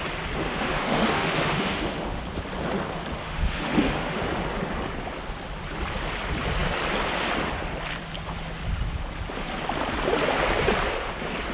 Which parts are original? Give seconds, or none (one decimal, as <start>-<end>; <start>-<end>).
0.0-0.4; 2.2-3.2; 4.2-11.5